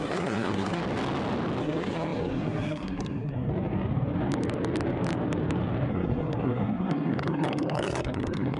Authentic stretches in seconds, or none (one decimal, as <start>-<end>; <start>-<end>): 0.8-1.6; 3.5-5.9